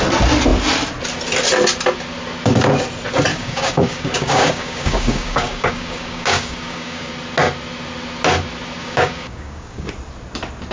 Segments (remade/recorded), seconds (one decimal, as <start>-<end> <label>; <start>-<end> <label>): 0.0-3.3 recorded; 3.3-7.1 remade; 7.1-8.8 recorded; 8.8-9.9 remade; 9.9-10.7 recorded